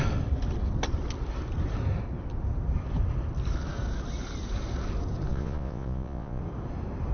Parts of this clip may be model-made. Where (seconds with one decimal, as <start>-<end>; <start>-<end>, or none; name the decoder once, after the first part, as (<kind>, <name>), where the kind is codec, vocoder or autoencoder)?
5.3-6.4 (vocoder, Vocos)